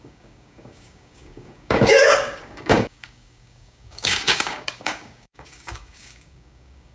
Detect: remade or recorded remade